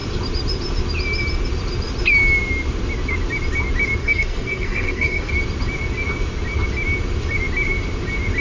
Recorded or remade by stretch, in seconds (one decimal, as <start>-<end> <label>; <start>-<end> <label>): 0.0-4.0 recorded; 4.0-5.3 remade; 5.3-8.4 recorded